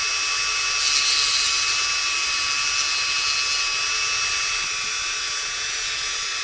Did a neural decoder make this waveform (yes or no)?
no